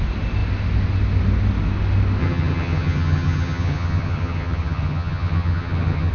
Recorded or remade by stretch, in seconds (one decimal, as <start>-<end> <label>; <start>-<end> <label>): 0.0-2.2 recorded; 2.2-6.1 remade